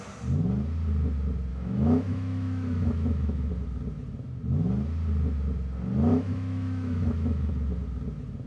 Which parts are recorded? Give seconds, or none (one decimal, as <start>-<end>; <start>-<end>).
0.0-1.5; 3.5-6.1; 7.5-8.5